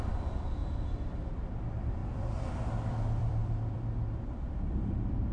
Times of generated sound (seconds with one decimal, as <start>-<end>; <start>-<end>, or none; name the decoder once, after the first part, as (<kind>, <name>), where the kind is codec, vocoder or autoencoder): 0.0-0.6 (vocoder, BigVGAN v2); 1.6-5.3